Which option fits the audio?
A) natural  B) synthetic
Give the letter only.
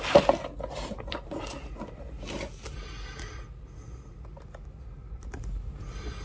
A